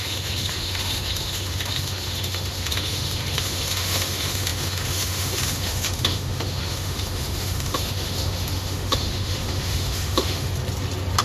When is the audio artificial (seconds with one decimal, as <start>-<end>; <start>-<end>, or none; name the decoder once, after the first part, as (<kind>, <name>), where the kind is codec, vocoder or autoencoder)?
0.0-10.5 (autoencoder, DAC-VAE)